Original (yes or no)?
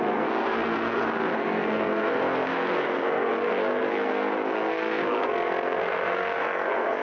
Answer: no